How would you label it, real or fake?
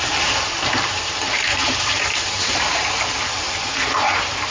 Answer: fake